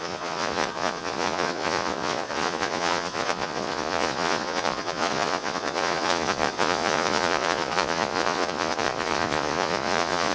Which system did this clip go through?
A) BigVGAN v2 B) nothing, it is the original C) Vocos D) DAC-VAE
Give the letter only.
C